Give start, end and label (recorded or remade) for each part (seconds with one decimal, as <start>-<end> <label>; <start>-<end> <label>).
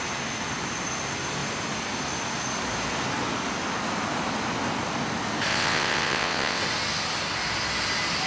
0.0-5.5 recorded; 5.5-6.6 remade; 6.6-8.3 recorded